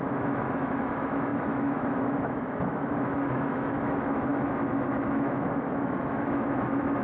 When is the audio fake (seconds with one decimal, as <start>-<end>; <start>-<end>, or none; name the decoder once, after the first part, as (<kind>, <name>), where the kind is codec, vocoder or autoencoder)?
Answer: 0.0-4.3 (autoencoder, DAC-VAE); 4.9-7.0